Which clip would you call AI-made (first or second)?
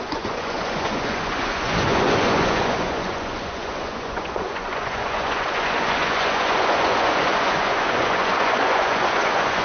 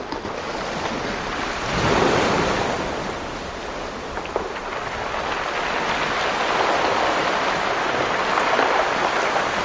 first